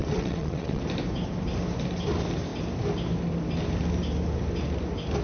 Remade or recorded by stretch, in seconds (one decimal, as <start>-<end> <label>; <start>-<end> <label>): 0.0-0.8 remade; 0.8-5.2 recorded